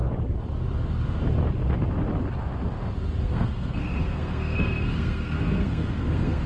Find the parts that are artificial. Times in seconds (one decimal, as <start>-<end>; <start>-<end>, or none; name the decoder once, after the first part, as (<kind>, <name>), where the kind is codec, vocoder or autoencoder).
3.2-6.5 (codec, SNAC)